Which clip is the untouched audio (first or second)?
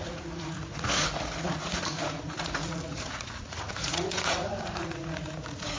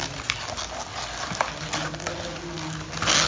second